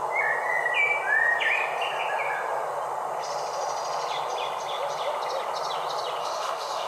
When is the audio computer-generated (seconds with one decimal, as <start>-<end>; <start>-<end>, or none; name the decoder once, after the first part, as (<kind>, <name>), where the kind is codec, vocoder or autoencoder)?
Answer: 6.2-6.9 (autoencoder, DAC-VAE)